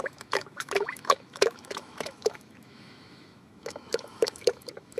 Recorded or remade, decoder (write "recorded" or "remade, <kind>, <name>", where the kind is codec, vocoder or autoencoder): remade, autoencoder, DAC-VAE